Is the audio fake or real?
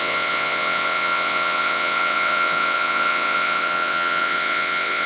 fake